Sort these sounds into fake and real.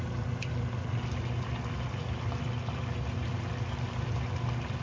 real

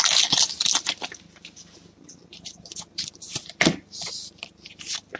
real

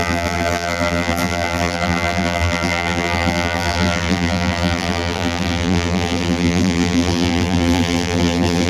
fake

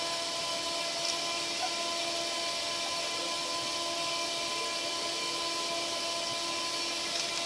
real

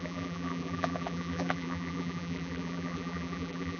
fake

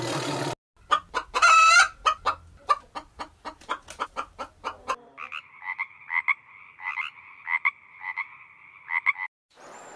real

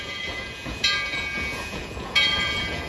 fake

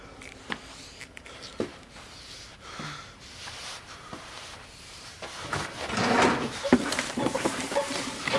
fake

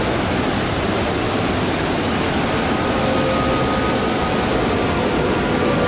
real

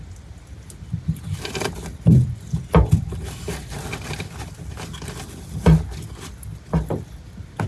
real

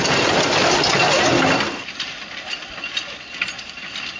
real